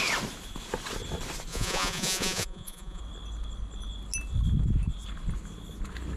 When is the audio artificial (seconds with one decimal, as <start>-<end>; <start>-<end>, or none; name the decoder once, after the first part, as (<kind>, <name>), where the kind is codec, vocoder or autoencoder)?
1.5-3.0 (vocoder, Vocos)